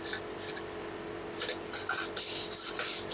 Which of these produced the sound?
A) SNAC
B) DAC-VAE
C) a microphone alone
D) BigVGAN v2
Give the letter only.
C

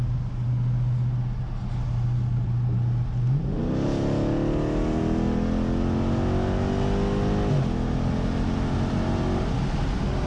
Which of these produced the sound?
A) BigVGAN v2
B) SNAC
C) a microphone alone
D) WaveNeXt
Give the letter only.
C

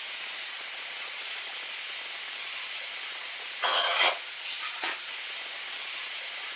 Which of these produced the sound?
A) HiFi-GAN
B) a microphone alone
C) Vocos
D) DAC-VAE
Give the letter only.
C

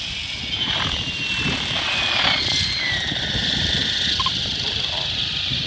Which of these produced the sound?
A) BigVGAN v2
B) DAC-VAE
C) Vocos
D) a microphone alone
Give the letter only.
D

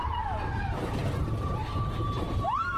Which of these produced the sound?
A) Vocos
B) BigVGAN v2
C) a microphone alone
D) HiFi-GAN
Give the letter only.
B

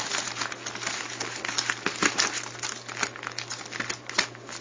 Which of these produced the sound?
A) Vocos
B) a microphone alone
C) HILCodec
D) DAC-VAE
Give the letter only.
B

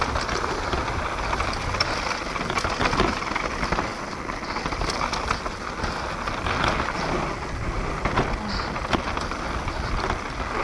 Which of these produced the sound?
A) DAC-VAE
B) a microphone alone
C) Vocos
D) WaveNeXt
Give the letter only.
B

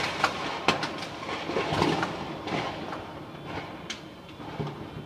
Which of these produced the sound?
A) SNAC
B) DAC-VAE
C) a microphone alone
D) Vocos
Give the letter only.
C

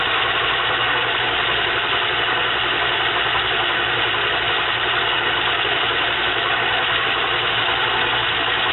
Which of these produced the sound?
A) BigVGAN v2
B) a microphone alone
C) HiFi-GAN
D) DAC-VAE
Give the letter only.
B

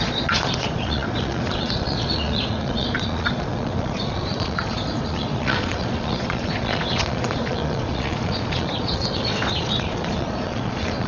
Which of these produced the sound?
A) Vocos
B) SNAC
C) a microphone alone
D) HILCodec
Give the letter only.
A